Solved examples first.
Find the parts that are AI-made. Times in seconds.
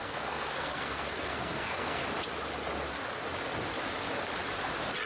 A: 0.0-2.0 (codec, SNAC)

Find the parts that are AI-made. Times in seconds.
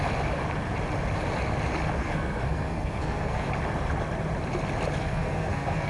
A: 2.0-3.5 (codec, SNAC); 5.0-5.9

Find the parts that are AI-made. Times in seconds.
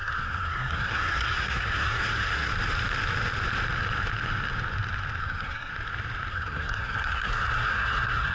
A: 0.0-2.5 (codec, SNAC); 5.2-5.7; 6.3-8.3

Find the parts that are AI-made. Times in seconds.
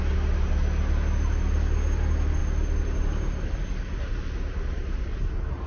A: none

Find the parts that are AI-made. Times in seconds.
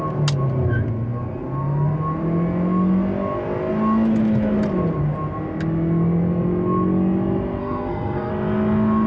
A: 7.6-8.3 (codec, SNAC)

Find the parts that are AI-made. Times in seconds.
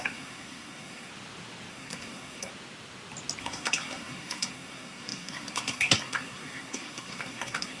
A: 0.0-1.1 (codec, SNAC); 1.7-2.5; 3.4-7.8